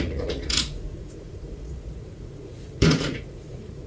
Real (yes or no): no